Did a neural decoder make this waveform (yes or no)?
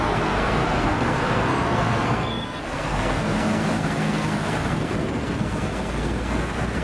yes